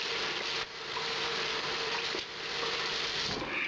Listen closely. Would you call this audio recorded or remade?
recorded